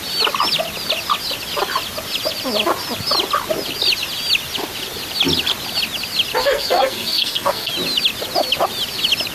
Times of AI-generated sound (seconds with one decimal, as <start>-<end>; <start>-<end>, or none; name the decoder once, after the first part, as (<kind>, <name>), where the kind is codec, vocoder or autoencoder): 6.4-7.7 (codec, SNAC)